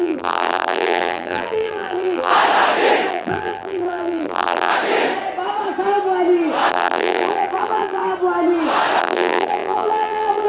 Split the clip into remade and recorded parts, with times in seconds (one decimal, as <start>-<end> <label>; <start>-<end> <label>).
0.0-2.3 remade; 2.3-3.1 recorded; 3.1-4.7 remade; 4.7-6.7 recorded; 6.7-8.0 remade; 8.0-9.0 recorded; 9.0-10.5 remade